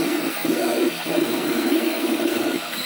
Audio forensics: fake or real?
fake